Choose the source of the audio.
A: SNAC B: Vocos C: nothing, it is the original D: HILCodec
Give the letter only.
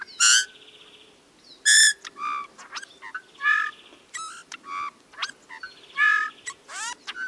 C